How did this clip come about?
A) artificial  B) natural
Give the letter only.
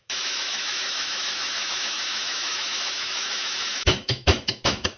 A